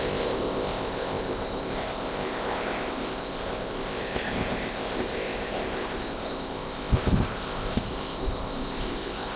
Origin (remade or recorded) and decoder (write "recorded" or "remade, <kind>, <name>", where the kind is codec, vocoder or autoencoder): remade, codec, ZipCodec